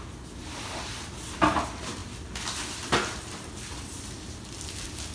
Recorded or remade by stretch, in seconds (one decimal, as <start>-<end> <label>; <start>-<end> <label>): 0.0-5.1 recorded